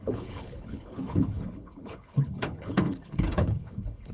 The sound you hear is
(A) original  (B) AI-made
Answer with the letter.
B